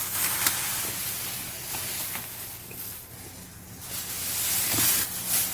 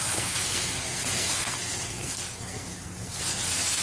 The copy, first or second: second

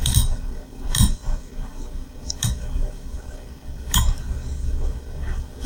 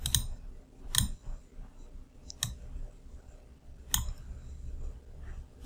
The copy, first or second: first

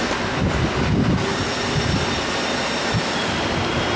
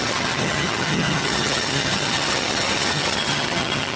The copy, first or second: second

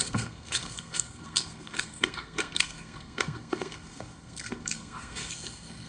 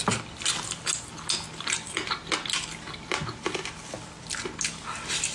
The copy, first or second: first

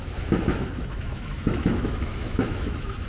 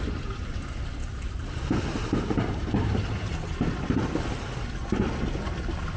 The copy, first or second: first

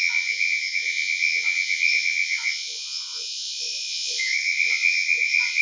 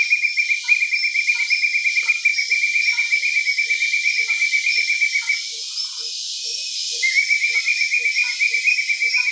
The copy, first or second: first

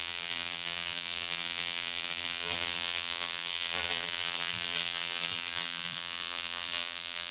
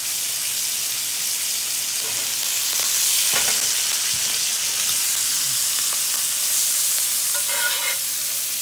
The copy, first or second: first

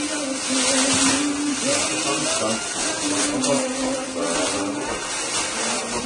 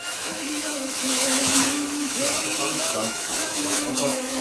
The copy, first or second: second